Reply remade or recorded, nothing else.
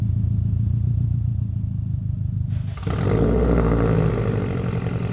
recorded